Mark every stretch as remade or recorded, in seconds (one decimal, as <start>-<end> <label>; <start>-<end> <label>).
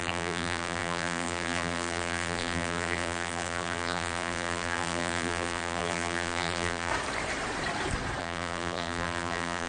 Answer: 0.0-6.9 remade; 6.9-8.2 recorded; 8.2-9.7 remade